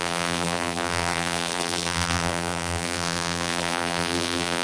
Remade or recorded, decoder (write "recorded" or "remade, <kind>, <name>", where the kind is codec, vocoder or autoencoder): remade, vocoder, BigVGAN v2